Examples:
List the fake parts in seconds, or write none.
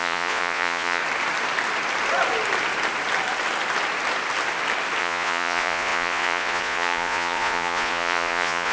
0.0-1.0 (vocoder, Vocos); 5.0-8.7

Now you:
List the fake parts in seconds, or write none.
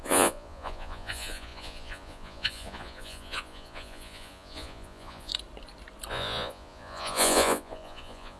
0.0-5.3 (vocoder, Vocos); 6.1-8.4